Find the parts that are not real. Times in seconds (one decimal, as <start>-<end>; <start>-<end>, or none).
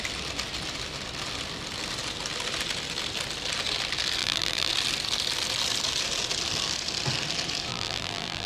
4.2-4.7; 7.7-8.5